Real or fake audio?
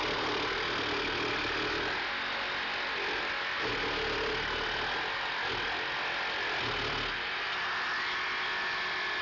real